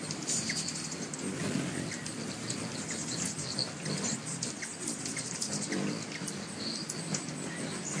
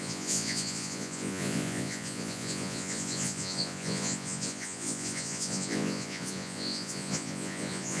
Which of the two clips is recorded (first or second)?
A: first